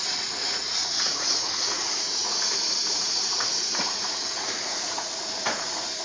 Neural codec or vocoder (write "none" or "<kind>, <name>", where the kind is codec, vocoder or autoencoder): vocoder, Vocos